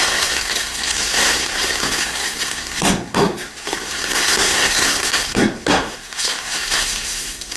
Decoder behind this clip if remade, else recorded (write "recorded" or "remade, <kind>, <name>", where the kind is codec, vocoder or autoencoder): remade, codec, SNAC